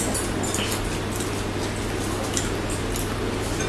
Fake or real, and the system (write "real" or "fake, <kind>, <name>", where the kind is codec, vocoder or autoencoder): real